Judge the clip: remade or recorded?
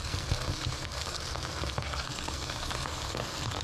remade